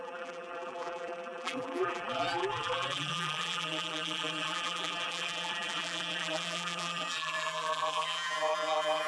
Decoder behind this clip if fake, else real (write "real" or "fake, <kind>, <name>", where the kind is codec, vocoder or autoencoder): fake, vocoder, BigVGAN v2